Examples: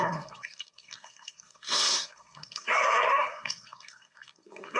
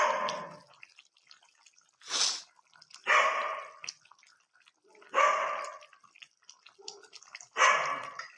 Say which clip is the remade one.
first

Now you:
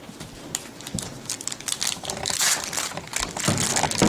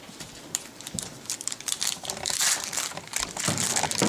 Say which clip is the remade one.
second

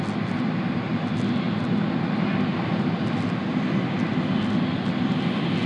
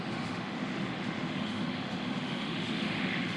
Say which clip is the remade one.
second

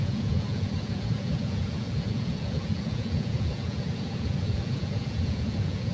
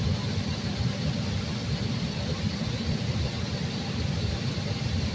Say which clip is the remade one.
first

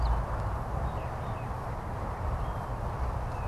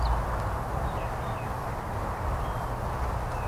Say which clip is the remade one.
first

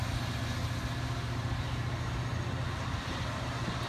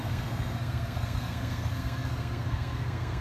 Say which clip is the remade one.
second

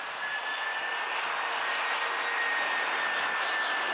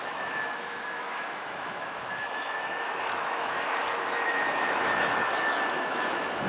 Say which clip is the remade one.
second